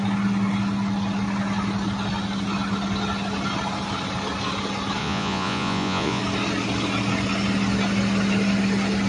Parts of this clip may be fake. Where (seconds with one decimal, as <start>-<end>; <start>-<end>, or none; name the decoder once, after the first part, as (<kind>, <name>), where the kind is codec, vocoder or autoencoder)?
5.0-6.2 (vocoder, Vocos)